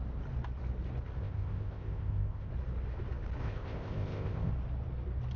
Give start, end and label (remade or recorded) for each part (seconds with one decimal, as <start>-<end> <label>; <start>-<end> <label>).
0.0-1.2 recorded; 1.2-2.5 remade; 2.5-3.4 recorded; 3.4-4.5 remade; 4.5-5.4 recorded